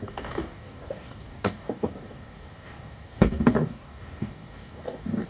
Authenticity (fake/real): fake